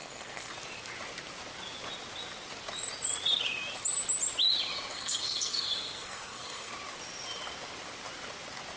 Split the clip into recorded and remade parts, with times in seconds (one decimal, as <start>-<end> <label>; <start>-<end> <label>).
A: 0.0-0.5 remade; 0.5-4.9 recorded; 4.9-6.7 remade; 6.7-8.8 recorded